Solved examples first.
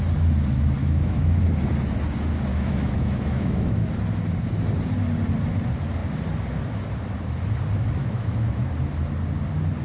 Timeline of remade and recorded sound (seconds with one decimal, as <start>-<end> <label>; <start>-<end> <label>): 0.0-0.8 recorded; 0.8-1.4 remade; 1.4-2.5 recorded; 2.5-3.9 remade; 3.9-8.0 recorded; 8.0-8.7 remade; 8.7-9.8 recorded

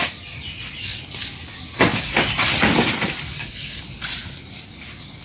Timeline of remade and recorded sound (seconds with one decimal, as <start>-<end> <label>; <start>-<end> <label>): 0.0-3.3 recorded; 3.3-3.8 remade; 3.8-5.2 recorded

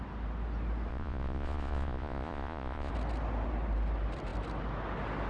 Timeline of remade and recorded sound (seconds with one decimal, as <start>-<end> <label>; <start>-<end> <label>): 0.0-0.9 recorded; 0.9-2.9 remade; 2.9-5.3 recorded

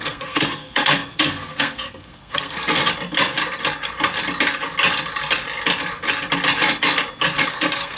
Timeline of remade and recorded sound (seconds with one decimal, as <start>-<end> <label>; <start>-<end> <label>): 0.0-2.8 remade; 2.8-7.5 recorded; 7.5-8.0 remade